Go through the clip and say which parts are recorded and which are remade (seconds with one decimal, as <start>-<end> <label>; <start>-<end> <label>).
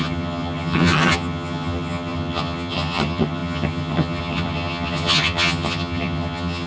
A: 0.0-6.7 remade